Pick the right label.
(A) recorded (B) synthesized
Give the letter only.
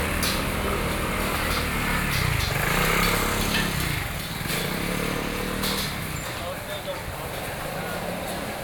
A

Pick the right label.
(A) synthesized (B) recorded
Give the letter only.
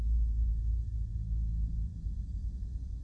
B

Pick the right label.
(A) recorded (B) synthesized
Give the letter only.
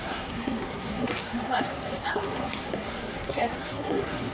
B